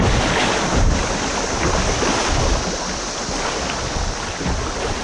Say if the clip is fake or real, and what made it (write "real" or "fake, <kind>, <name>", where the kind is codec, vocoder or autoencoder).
real